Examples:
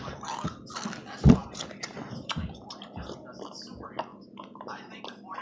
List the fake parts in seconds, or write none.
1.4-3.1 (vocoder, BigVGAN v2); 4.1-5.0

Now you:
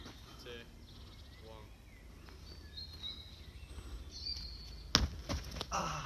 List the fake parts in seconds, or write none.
none

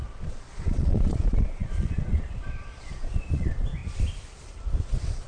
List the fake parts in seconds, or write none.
0.0-3.8 (vocoder, Vocos); 4.7-5.3

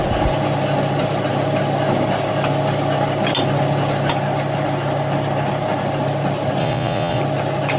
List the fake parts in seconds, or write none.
6.6-7.2 (vocoder, Vocos)

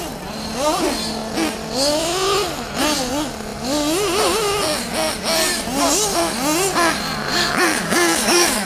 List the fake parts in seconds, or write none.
7.3-8.7 (codec, DAC)

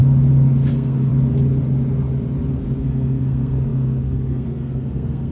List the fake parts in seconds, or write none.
0.7-1.1 (codec, SNAC); 2.8-5.3